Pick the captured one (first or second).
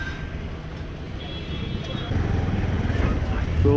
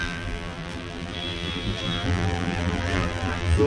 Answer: first